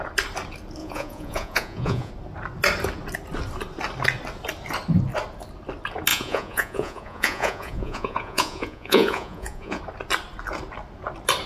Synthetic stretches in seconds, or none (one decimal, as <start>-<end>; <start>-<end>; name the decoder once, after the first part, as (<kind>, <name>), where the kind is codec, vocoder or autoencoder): 0.8-2.1 (vocoder, Vocos); 6.1-9.8